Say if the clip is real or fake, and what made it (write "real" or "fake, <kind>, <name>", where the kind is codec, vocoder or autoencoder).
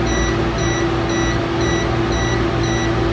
real